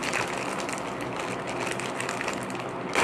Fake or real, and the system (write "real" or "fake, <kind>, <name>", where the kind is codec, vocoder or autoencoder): real